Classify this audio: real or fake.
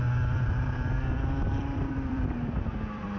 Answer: fake